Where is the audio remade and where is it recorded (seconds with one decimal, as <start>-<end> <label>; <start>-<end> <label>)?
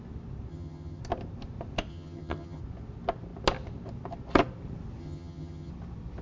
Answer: 0.0-0.5 recorded; 0.5-1.0 remade; 1.0-1.9 recorded; 1.9-2.6 remade; 2.6-5.0 recorded; 5.0-5.7 remade; 5.7-6.2 recorded